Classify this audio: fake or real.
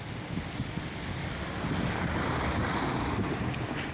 real